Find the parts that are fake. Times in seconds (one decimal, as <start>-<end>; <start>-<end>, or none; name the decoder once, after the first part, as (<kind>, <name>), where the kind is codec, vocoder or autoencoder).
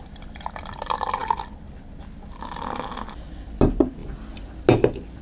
none